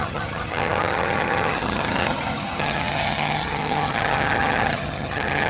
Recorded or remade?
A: remade